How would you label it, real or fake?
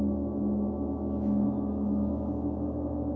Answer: fake